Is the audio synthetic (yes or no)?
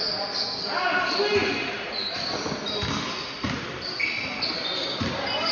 no